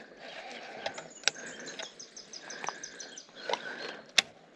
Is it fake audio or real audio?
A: real